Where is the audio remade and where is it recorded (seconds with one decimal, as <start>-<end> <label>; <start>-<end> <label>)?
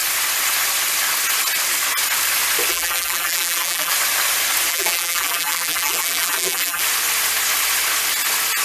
0.0-2.7 recorded; 2.7-3.9 remade; 3.9-4.7 recorded; 4.7-6.8 remade; 6.8-8.6 recorded